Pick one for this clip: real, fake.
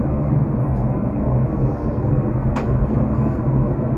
fake